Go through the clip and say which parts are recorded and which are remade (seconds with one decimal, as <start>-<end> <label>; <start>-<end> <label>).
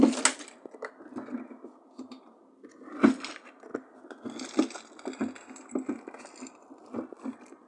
0.0-7.7 recorded